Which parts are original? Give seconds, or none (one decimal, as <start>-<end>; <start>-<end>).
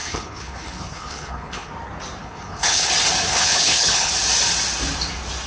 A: 1.7-2.2; 2.9-3.3; 4.1-5.5